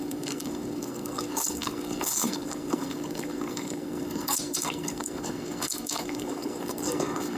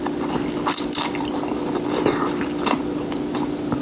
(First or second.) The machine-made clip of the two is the first